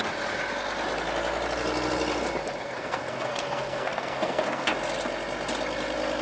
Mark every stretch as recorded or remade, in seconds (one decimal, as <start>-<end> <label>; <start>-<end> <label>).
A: 0.0-2.6 recorded; 2.6-4.7 remade; 4.7-6.2 recorded